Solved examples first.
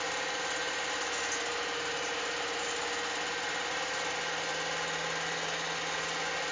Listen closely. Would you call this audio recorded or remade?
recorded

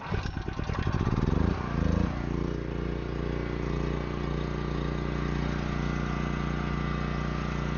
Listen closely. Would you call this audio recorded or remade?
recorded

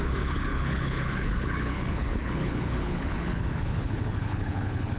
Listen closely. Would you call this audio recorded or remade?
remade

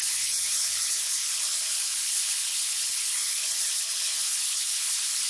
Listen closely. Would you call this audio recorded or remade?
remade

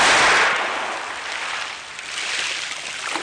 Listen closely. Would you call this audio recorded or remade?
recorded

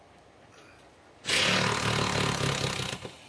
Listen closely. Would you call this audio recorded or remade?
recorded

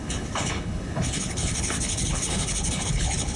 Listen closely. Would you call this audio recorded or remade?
remade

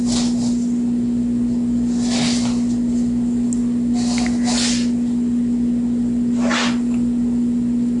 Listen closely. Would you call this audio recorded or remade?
recorded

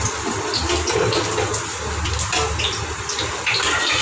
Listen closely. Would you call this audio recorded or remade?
recorded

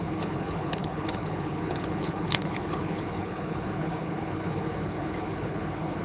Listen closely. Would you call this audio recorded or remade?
remade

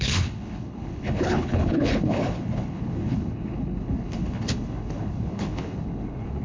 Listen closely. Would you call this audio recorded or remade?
remade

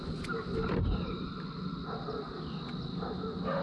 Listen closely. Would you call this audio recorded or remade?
recorded